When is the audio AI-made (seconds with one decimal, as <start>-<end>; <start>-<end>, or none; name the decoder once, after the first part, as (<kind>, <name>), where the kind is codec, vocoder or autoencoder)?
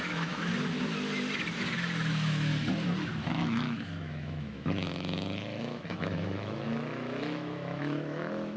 0.0-0.5 (autoencoder, DAC-VAE); 2.1-2.5; 3.2-8.6